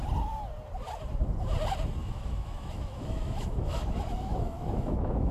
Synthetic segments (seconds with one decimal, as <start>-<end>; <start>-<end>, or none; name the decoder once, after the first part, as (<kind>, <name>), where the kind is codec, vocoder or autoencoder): 2.0-5.3 (autoencoder, DAC-VAE)